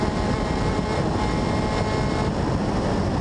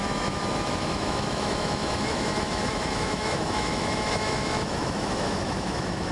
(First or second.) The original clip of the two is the first